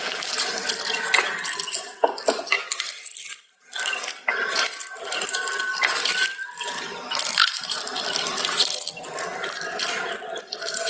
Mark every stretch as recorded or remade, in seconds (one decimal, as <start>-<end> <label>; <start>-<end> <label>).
0.0-3.4 recorded; 3.4-5.3 remade; 5.3-5.7 recorded; 5.7-8.9 remade; 8.9-10.9 recorded